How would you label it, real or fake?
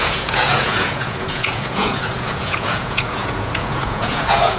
fake